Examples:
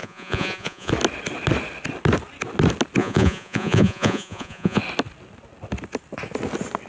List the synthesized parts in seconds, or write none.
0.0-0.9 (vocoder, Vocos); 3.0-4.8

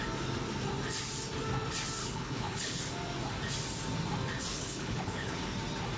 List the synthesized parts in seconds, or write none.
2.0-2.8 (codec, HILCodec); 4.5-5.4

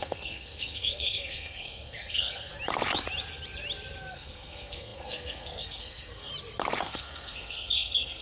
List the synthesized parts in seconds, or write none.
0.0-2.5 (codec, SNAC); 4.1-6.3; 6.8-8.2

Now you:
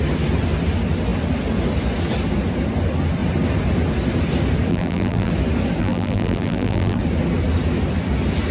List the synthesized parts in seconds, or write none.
4.7-5.3 (vocoder, BigVGAN v2); 5.8-7.0

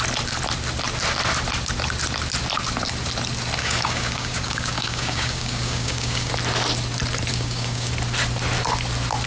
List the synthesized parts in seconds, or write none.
3.6-6.3 (codec, DAC); 7.3-7.9